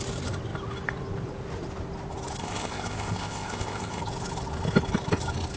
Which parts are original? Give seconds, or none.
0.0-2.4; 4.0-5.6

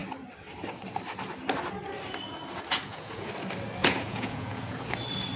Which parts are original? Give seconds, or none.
0.0-2.7; 3.3-3.8; 4.8-5.4

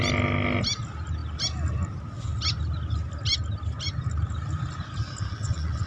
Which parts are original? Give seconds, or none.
0.0-5.3

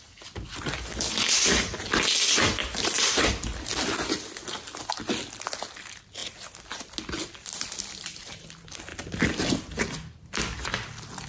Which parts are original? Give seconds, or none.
0.0-2.6; 3.2-11.3

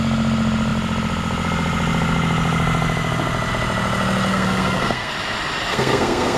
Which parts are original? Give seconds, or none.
0.0-4.3; 5.1-5.7

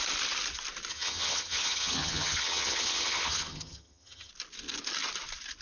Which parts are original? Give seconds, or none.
0.0-0.9; 4.3-5.6

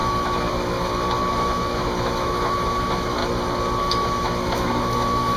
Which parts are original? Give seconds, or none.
3.2-3.8

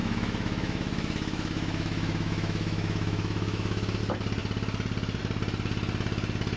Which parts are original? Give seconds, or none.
4.0-6.6